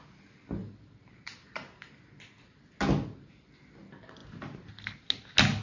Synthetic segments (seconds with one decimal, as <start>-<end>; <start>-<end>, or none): 0.6-1.9